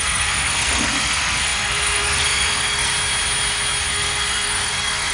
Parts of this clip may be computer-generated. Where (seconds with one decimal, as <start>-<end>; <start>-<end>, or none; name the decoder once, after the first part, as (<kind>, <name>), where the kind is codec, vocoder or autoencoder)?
0.0-2.9 (codec, SNAC); 3.9-5.1